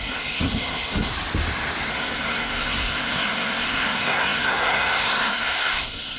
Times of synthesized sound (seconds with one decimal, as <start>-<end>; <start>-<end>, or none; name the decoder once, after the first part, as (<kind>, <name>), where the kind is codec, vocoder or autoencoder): 0.0-1.1 (codec, SNAC); 1.9-6.2